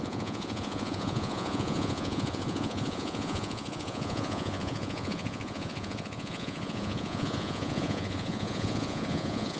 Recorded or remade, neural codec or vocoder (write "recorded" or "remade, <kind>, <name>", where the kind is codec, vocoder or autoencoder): remade, vocoder, Vocos